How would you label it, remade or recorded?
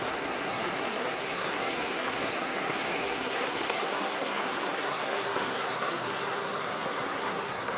remade